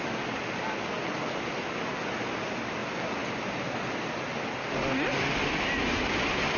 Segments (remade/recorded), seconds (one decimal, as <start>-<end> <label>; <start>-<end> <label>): 0.0-6.6 recorded